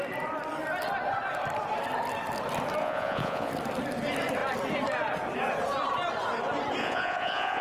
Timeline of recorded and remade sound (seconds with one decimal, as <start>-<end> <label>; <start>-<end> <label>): 0.0-2.8 recorded; 2.8-3.5 remade; 3.5-6.8 recorded; 6.8-7.6 remade